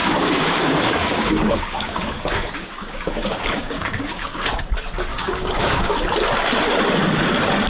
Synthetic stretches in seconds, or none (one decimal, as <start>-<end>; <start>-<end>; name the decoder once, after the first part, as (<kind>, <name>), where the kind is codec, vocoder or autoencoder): 0.0-4.6 (codec, DAC); 5.1-5.9